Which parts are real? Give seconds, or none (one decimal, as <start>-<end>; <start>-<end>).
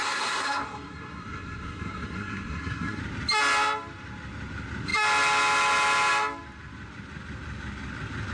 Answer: 3.0-8.3